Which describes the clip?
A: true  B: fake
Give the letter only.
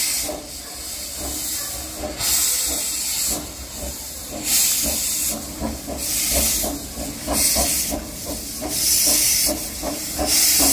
A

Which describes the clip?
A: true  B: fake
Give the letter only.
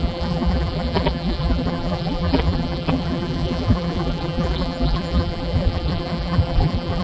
B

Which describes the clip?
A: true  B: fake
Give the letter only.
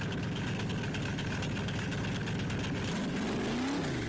A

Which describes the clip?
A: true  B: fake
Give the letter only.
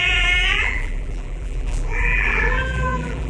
B